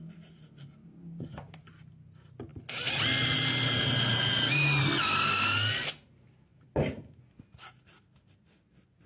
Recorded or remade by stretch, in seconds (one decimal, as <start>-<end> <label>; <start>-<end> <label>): 0.0-9.1 recorded

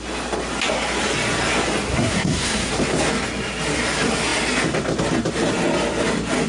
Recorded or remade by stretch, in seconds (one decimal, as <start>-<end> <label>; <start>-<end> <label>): 0.0-1.9 recorded; 1.9-2.7 remade; 2.7-6.5 recorded

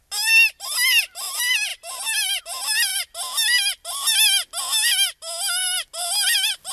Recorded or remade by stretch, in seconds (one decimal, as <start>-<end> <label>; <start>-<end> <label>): 0.0-6.7 recorded

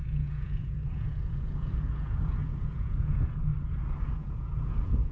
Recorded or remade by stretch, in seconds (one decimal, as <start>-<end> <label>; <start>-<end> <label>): 0.0-3.5 remade; 3.5-4.0 recorded; 4.0-5.1 remade

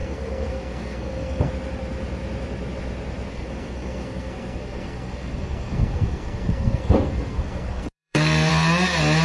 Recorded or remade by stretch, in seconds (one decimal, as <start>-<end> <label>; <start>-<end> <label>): 0.0-1.5 remade; 1.5-3.3 recorded; 3.3-8.5 remade; 8.5-9.2 recorded

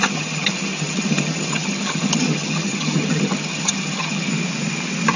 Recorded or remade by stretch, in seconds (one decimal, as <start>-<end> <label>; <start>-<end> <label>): 0.0-4.3 remade; 4.3-5.2 recorded

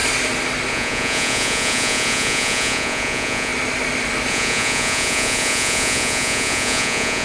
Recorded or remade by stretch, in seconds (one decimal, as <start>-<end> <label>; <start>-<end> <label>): 0.0-0.7 recorded; 0.7-3.5 remade; 3.5-4.3 recorded; 4.3-7.2 remade

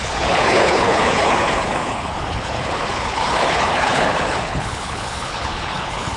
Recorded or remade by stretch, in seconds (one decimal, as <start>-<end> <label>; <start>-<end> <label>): 0.0-6.2 remade